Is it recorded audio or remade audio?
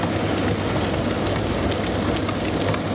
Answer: recorded